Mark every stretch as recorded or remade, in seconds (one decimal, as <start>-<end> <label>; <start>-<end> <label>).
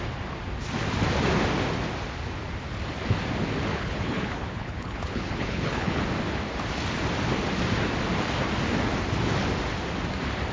0.0-3.7 recorded; 3.7-6.0 remade; 6.0-10.5 recorded